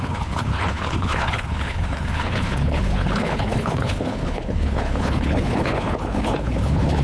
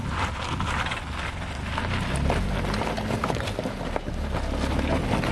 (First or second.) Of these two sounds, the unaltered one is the second